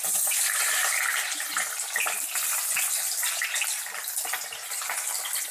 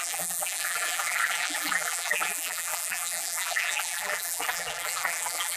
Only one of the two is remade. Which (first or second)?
second